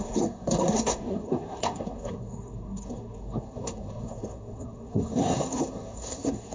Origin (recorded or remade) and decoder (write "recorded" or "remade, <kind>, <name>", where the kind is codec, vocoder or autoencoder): remade, codec, SNAC